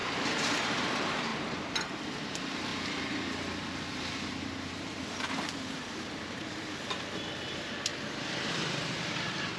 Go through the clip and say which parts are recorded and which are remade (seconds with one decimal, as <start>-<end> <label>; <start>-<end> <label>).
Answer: 0.0-0.9 recorded; 0.9-1.3 remade; 1.3-2.3 recorded; 2.3-2.7 remade; 2.7-3.3 recorded; 3.3-7.9 remade; 7.9-8.5 recorded; 8.5-9.6 remade